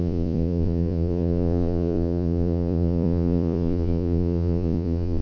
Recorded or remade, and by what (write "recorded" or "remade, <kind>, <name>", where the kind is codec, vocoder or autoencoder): remade, vocoder, Vocos